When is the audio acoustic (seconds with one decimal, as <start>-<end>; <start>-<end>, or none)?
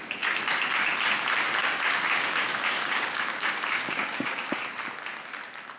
0.0-1.6; 4.7-5.8